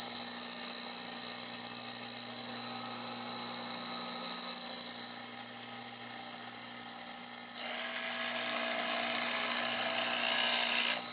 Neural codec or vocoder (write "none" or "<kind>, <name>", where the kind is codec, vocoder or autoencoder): none